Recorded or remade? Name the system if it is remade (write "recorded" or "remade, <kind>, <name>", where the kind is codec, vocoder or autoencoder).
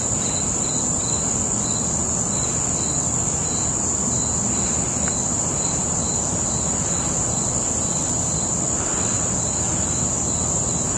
recorded